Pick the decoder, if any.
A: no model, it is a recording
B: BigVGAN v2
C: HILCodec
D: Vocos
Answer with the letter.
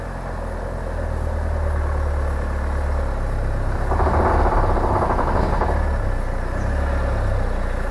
A